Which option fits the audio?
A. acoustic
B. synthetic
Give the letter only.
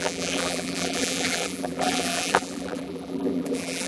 B